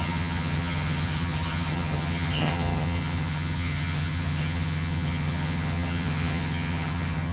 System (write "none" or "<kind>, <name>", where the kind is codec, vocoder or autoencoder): vocoder, HiFi-GAN